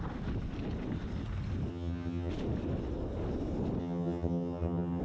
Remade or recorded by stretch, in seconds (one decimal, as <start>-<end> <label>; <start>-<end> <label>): 0.0-1.7 recorded; 1.7-2.3 remade; 2.3-3.8 recorded; 3.8-5.0 remade